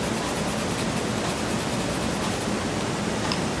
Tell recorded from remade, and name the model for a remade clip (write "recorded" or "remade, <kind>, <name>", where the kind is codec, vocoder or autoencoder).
recorded